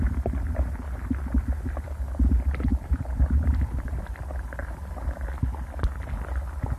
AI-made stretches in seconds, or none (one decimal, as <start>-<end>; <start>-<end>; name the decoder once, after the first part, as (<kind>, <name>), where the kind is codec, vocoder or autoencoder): 2.7-4.0 (vocoder, BigVGAN v2)